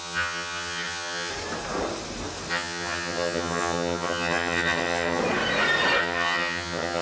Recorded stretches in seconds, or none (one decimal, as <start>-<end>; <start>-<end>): 1.3-2.5; 5.2-6.0